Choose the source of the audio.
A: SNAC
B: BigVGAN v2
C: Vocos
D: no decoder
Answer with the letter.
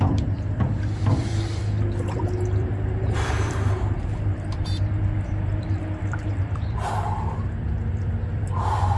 B